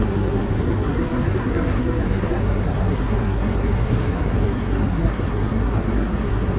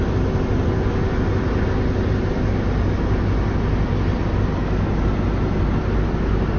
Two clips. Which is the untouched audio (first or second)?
second